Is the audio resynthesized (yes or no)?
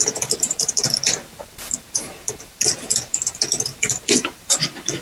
yes